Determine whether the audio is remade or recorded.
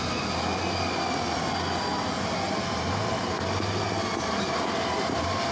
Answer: recorded